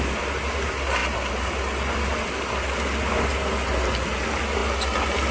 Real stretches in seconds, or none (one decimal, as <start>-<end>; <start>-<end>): 0.0-5.3